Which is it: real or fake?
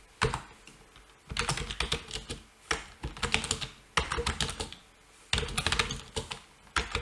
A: real